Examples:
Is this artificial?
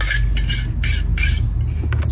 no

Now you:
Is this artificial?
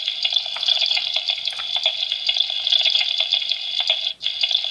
no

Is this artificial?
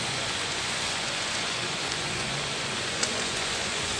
yes